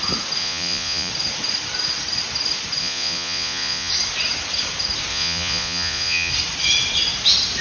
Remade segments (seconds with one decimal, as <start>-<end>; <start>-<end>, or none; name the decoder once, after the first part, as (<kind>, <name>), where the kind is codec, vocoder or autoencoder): 0.4-1.1 (vocoder, Vocos); 2.8-3.9; 5.1-6.3